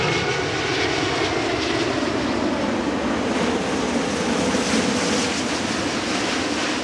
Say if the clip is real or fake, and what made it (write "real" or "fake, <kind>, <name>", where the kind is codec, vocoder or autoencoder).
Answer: real